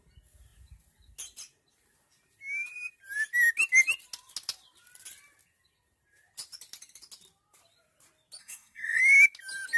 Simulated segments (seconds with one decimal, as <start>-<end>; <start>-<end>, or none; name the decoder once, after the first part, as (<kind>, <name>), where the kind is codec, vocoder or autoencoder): 8.4-9.0 (codec, SNAC)